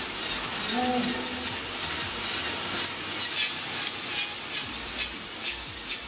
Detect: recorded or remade recorded